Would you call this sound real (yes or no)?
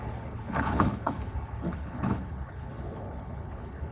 no